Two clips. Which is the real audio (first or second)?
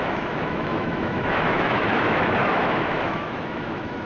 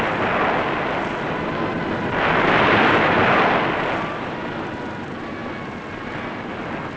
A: second